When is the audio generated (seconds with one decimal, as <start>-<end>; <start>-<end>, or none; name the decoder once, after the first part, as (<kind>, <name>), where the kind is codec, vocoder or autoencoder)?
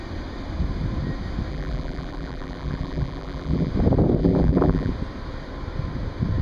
1.5-3.7 (vocoder, BigVGAN v2); 4.2-4.9